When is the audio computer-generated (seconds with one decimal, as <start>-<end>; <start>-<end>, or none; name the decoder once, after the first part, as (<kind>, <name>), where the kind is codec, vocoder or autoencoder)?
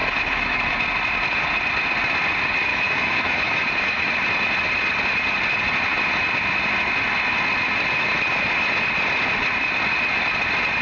0.0-0.7 (autoencoder, DAC-VAE); 2.7-4.1